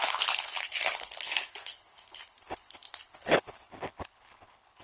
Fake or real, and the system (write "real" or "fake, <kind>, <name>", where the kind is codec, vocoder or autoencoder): fake, codec, HILCodec